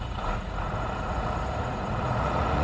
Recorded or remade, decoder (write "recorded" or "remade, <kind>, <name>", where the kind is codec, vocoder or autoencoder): remade, vocoder, Vocos